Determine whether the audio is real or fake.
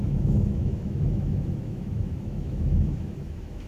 fake